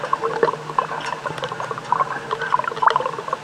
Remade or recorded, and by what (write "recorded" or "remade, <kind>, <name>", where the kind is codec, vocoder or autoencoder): recorded